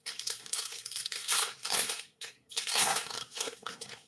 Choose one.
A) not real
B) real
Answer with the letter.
A